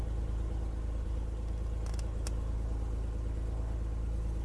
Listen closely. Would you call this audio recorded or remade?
recorded